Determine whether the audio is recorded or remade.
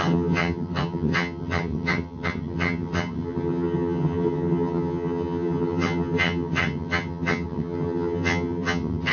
remade